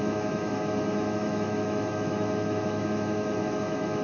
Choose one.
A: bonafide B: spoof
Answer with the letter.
B